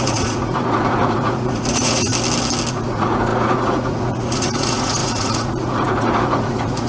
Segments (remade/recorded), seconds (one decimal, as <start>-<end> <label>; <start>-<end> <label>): 0.0-2.1 remade; 2.1-2.7 recorded; 2.7-6.9 remade